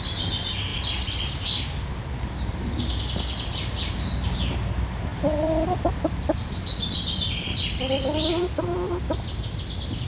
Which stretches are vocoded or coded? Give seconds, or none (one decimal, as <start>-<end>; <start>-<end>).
5.1-9.1

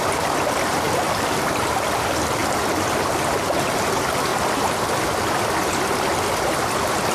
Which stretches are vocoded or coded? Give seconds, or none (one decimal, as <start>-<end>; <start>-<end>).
none

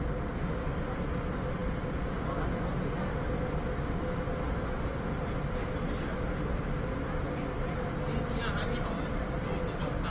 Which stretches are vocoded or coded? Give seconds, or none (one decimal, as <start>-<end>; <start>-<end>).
none

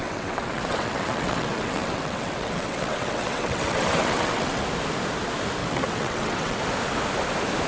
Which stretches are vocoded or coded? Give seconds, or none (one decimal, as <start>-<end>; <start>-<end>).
0.0-4.6; 5.6-6.6

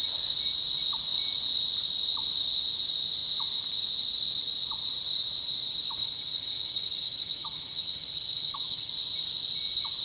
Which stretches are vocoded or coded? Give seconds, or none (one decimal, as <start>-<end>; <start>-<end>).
6.0-8.9